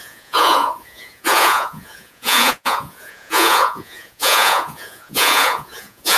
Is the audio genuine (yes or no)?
no